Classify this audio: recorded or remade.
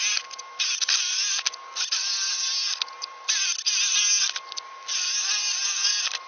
recorded